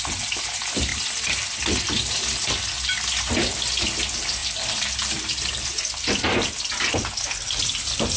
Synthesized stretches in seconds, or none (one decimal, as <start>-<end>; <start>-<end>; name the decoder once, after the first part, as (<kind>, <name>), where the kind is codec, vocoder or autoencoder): 0.9-1.6 (vocoder, BigVGAN v2); 4.4-5.2